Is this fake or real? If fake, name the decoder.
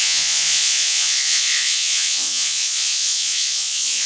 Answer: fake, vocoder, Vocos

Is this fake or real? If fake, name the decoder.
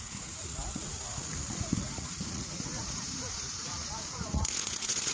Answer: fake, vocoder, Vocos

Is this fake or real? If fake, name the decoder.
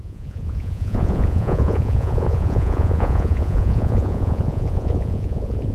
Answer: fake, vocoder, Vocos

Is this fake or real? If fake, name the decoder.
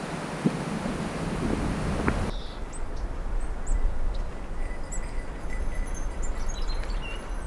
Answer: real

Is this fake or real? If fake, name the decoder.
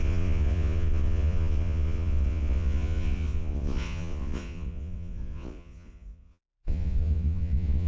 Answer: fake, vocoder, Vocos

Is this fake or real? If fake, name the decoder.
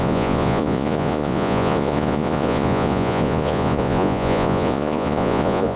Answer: fake, vocoder, Vocos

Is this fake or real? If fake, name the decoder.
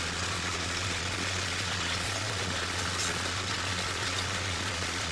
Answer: fake, vocoder, Vocos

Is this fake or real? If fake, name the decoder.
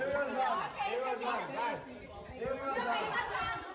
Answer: real